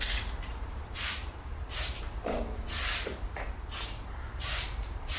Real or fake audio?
fake